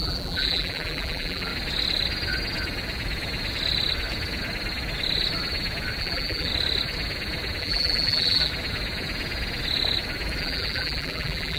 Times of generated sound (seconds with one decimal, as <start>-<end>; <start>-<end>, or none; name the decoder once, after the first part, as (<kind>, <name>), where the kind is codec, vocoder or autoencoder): 0.0-1.5 (vocoder, BigVGAN v2); 6.0-6.5; 7.6-8.5; 10.4-11.6